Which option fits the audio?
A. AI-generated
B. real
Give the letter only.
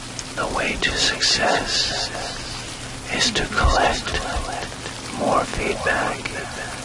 B